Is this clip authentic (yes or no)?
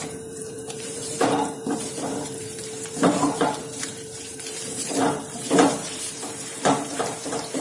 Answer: no